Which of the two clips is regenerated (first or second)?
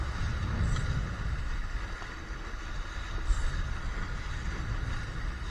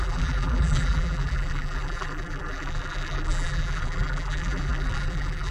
second